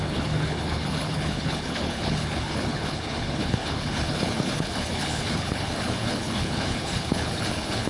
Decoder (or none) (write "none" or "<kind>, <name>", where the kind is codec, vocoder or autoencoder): codec, HILCodec